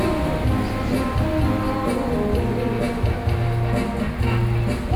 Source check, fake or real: real